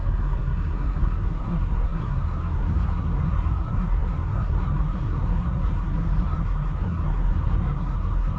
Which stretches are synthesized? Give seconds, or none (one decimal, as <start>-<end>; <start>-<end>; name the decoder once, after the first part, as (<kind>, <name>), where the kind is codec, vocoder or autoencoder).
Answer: 0.0-8.4 (codec, SNAC)